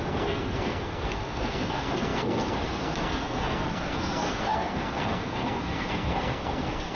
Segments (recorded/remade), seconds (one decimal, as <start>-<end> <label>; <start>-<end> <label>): 0.0-6.9 remade